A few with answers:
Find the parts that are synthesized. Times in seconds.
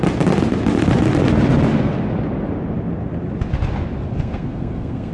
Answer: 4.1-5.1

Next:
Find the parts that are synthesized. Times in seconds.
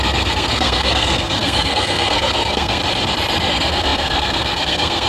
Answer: 0.0-2.8; 3.5-5.1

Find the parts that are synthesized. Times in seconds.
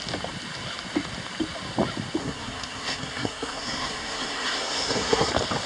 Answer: 2.2-5.3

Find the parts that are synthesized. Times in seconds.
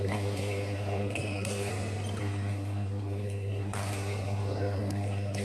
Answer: 0.0-1.7; 2.2-5.4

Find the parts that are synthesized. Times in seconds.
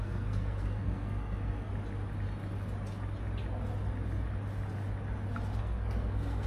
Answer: 0.0-1.7; 5.6-6.5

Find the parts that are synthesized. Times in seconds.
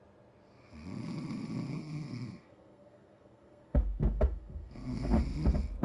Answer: 1.7-5.2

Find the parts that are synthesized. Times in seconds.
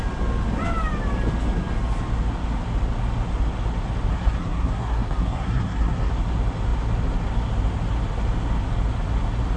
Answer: 4.1-6.1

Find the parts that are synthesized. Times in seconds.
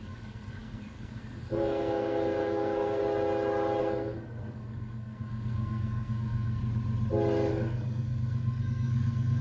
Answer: 0.0-3.0; 3.8-6.6; 7.5-9.4